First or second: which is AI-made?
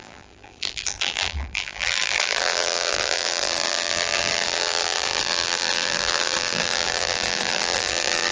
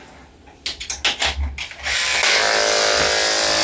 first